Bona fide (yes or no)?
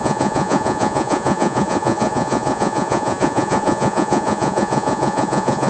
no